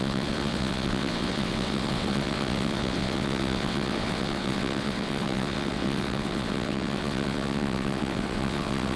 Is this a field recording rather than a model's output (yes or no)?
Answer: no